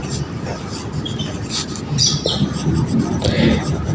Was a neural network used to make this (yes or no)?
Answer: yes